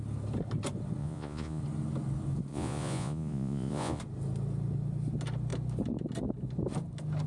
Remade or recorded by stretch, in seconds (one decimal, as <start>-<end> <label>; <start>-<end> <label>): 0.0-1.0 recorded; 1.0-1.6 remade; 1.6-2.5 recorded; 2.5-4.0 remade; 4.0-7.3 recorded